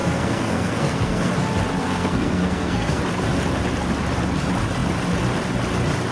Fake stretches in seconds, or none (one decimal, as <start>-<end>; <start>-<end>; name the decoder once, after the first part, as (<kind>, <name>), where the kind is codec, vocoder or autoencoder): 0.0-1.3 (codec, SNAC); 1.8-3.0